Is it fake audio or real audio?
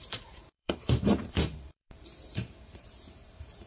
fake